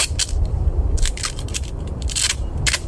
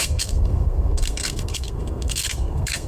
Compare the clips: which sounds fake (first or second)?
second